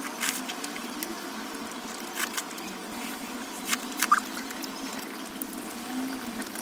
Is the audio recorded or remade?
recorded